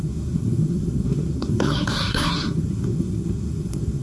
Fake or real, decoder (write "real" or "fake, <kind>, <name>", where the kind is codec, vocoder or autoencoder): fake, codec, SNAC